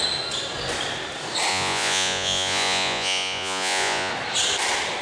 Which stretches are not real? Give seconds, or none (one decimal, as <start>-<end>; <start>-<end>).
1.5-4.1